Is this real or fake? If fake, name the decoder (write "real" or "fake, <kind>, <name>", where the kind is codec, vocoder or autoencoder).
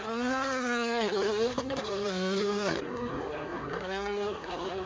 fake, codec, SNAC